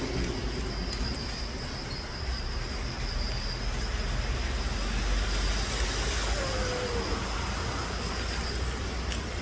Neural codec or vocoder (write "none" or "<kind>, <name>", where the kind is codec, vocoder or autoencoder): none